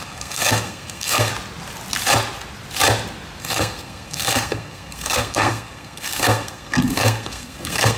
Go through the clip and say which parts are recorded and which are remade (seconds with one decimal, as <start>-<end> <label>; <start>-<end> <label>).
0.0-1.3 remade; 1.3-3.4 recorded; 3.4-8.0 remade